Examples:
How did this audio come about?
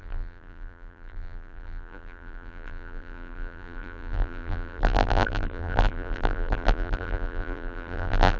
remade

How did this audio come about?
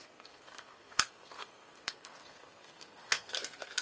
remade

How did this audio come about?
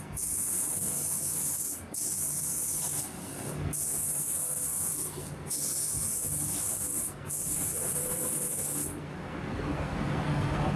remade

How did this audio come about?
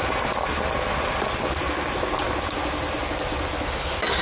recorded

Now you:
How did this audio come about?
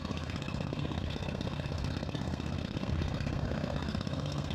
remade